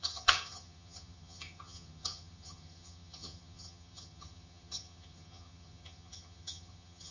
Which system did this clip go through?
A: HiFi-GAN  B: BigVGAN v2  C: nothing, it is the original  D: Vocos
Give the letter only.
A